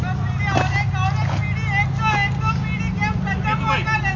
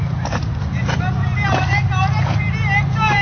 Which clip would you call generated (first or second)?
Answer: second